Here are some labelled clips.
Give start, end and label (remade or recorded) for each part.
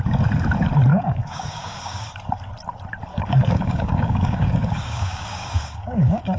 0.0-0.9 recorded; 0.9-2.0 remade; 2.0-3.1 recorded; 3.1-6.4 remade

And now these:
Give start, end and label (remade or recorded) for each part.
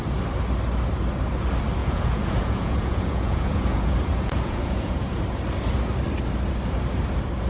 0.0-1.8 recorded; 1.8-5.0 remade; 5.0-7.5 recorded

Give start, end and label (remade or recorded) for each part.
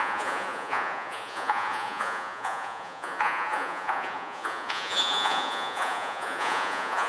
0.0-7.1 remade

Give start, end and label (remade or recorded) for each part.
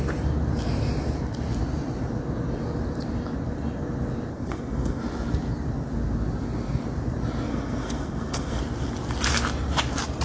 0.0-4.3 recorded; 4.3-5.0 remade; 5.0-7.5 recorded; 7.5-8.6 remade; 8.6-10.2 recorded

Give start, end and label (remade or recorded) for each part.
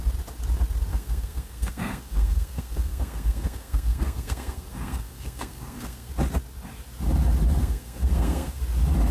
0.0-0.9 recorded; 0.9-6.1 remade; 6.1-7.6 recorded; 7.6-8.6 remade; 8.6-9.1 recorded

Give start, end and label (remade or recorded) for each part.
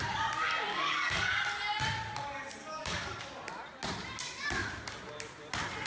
0.0-0.7 recorded; 0.7-1.3 remade; 1.3-2.6 recorded; 2.6-3.2 remade; 3.2-5.9 recorded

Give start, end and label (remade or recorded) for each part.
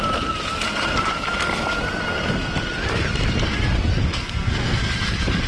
0.0-4.0 recorded; 4.0-4.9 remade; 4.9-5.5 recorded